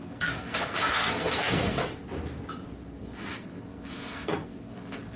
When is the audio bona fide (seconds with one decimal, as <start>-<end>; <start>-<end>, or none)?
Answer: 1.8-3.0